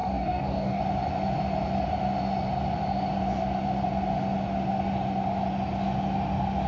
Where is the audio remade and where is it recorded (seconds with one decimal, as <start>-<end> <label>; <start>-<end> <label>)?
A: 0.0-0.8 remade; 0.8-6.7 recorded